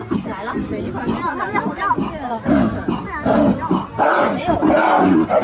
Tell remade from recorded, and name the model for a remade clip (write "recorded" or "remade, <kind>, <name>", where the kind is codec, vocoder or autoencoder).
recorded